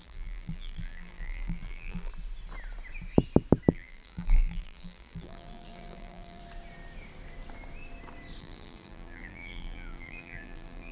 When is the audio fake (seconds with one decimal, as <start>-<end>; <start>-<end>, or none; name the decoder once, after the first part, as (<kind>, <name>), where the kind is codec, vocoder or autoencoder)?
0.0-2.1 (vocoder, BigVGAN v2); 3.7-6.4; 8.4-10.9